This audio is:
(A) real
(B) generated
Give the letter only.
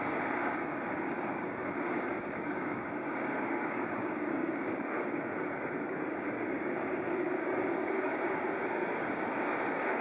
B